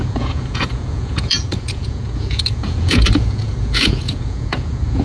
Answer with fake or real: fake